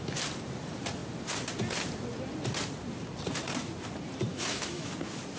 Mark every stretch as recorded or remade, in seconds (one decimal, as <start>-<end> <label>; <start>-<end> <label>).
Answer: 0.0-4.3 recorded; 4.3-4.9 remade; 4.9-5.4 recorded